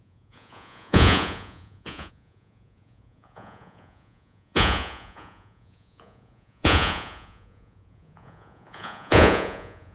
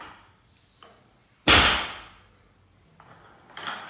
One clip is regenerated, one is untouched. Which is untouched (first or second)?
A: second